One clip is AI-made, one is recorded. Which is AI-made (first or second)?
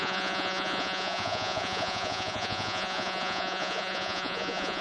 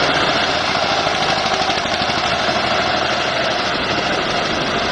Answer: first